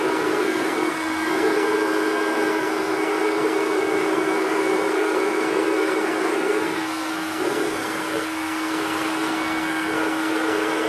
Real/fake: fake